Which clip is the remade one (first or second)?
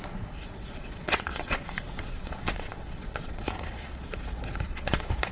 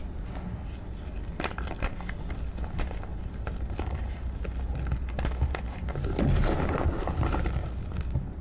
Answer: first